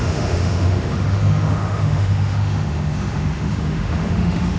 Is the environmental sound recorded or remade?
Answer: remade